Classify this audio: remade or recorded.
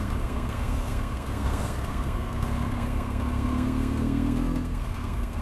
remade